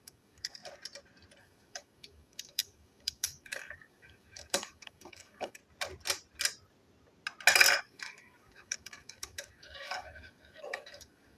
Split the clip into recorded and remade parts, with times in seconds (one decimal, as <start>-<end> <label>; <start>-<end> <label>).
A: 0.0-0.6 remade; 0.6-1.4 recorded; 1.4-5.6 remade; 5.6-7.8 recorded; 7.8-11.4 remade